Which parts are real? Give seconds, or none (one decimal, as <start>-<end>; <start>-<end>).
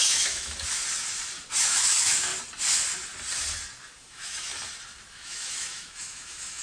0.8-1.6; 2.3-4.0; 4.5-5.1